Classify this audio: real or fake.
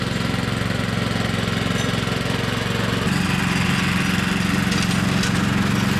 real